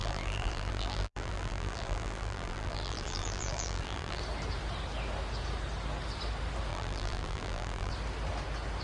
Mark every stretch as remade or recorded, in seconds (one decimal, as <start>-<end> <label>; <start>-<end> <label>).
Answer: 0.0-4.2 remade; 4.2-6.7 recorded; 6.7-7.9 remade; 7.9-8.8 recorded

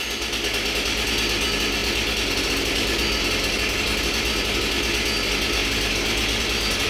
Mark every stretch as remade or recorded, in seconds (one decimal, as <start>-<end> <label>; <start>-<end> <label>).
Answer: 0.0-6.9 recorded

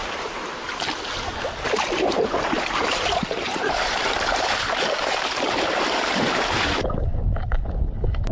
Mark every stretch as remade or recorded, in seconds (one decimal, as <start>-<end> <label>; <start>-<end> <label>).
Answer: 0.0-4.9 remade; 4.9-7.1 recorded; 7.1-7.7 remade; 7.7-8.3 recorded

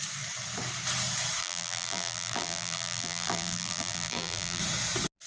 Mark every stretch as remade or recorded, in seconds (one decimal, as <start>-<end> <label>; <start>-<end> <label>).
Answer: 0.0-1.4 recorded; 1.4-4.6 remade; 4.6-5.3 recorded